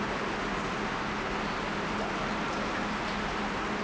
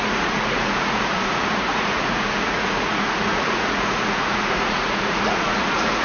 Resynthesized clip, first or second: second